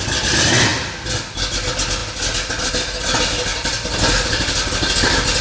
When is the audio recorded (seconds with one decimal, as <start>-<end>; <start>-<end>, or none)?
0.0-3.5; 4.9-5.4

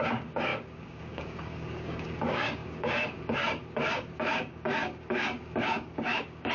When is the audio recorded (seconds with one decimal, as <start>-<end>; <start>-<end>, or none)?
none

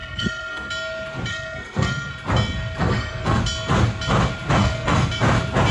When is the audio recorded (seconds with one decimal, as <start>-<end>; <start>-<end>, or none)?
0.7-1.3; 2.1-2.8; 3.4-4.6; 5.1-5.7

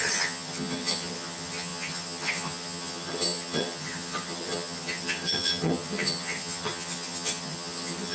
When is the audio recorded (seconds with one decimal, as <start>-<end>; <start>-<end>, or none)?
none

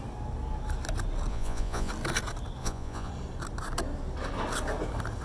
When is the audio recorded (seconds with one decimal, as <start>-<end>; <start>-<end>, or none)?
0.0-1.3; 1.9-2.6; 3.1-5.2